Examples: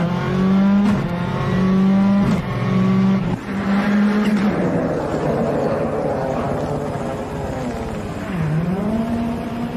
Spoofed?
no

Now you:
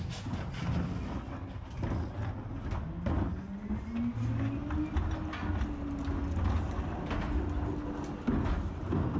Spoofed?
no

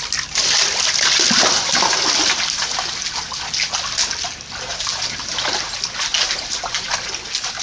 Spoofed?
no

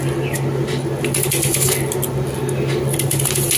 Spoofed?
no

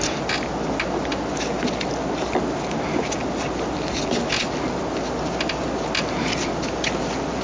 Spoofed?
no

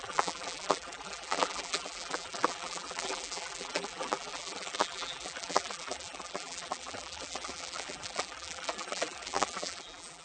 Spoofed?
yes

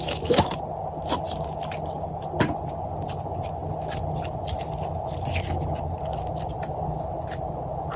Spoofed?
no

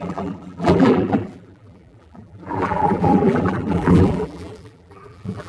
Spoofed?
yes